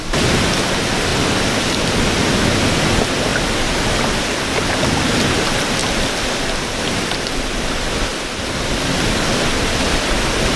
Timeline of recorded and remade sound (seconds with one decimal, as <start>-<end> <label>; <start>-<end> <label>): 0.0-1.1 recorded; 1.1-1.9 remade; 1.9-5.8 recorded; 5.8-6.8 remade; 6.8-8.1 recorded; 8.1-10.6 remade